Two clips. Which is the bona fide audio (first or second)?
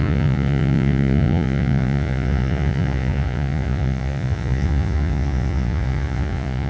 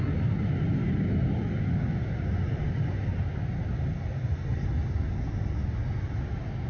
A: second